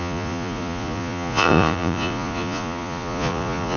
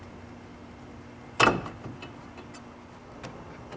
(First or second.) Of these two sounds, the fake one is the first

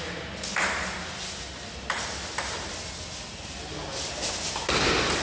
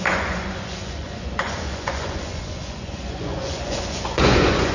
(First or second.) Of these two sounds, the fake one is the second